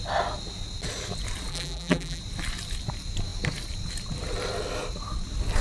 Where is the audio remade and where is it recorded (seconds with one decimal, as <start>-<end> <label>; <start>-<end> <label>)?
0.0-1.5 recorded; 1.5-2.2 remade; 2.2-5.6 recorded